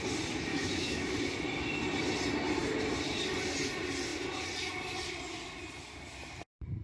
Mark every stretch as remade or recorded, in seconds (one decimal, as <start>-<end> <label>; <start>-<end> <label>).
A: 0.0-0.5 recorded; 0.5-1.1 remade; 1.1-6.8 recorded